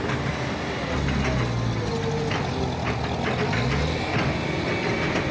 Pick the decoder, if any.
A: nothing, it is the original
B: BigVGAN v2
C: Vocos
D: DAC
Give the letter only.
A